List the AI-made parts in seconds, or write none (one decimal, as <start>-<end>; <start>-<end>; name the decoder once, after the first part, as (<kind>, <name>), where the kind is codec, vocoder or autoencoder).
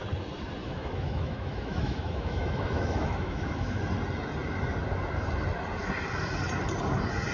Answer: 0.6-3.8 (autoencoder, DAC-VAE)